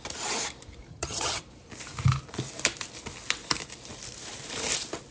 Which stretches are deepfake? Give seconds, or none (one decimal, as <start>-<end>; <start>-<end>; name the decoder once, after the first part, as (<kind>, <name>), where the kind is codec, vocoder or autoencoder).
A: 0.9-1.4 (vocoder, HiFi-GAN)